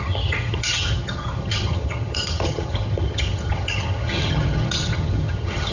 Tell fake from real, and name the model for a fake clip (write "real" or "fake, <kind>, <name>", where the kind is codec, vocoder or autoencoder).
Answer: fake, vocoder, HiFi-GAN